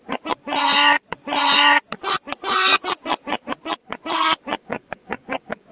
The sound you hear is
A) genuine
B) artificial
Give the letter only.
B